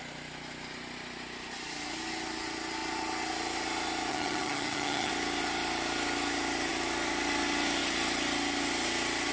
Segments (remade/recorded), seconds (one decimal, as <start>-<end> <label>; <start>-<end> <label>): 0.0-4.1 recorded; 4.1-5.1 remade; 5.1-9.3 recorded